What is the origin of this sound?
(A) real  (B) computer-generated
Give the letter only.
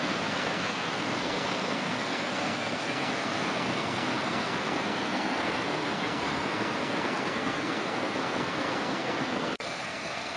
B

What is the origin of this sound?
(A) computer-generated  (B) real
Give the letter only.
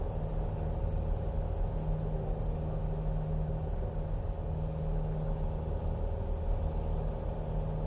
B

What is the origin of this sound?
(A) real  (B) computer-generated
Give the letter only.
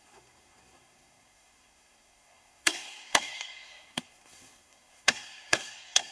B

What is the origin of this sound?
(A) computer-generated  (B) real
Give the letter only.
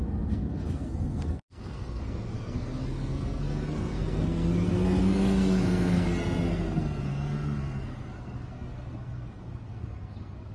A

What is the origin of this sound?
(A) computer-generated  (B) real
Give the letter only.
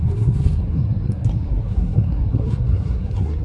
A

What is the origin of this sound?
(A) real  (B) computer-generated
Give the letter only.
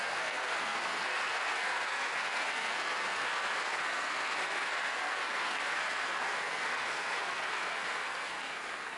B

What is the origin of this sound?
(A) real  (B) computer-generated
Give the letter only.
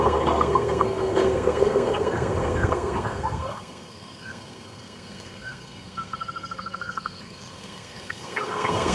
B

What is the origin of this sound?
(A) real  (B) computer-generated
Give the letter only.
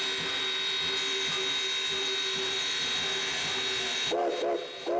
A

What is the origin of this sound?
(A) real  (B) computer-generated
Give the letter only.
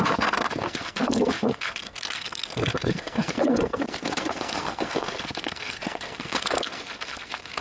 B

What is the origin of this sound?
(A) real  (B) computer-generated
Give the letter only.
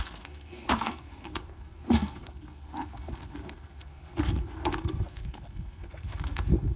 B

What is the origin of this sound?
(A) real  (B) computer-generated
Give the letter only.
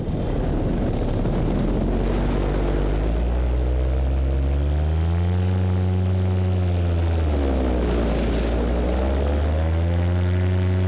A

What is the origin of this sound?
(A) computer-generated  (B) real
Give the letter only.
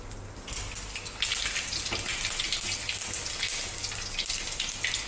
B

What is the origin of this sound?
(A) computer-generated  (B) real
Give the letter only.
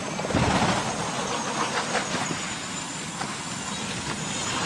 B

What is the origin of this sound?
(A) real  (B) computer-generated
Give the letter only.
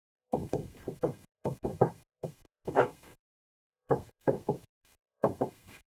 B